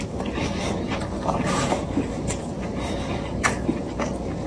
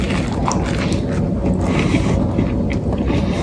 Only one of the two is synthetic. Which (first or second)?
first